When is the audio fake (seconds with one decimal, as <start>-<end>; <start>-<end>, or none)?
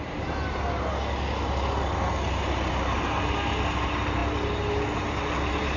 none